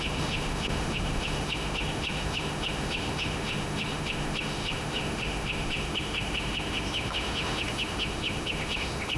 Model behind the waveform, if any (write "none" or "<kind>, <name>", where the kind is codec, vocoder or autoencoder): autoencoder, DAC-VAE